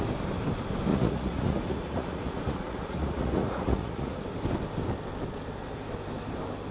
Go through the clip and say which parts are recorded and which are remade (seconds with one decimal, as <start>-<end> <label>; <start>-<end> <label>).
0.0-0.9 recorded; 0.9-4.2 remade; 4.2-6.7 recorded